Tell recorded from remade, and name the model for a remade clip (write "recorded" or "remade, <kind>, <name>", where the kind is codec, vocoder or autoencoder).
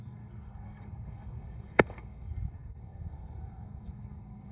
remade, codec, SNAC